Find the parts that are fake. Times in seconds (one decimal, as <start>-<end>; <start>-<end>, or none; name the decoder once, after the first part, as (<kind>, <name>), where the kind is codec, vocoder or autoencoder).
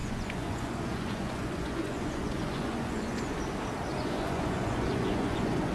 0.0-3.4 (vocoder, Vocos); 3.9-5.7